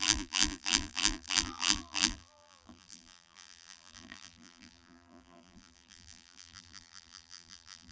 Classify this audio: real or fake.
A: fake